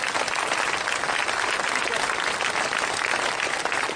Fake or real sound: real